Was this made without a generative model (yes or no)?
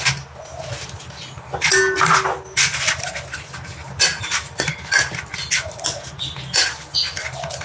yes